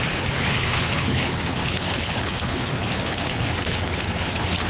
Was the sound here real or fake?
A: fake